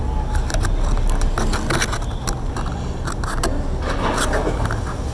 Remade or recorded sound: recorded